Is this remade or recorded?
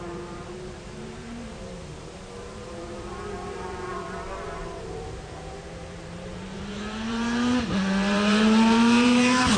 remade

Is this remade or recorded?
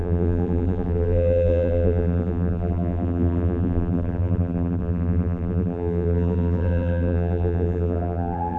remade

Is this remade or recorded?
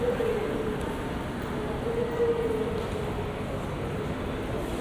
recorded